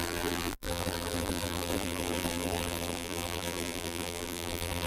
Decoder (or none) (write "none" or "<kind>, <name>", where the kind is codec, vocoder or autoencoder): vocoder, BigVGAN v2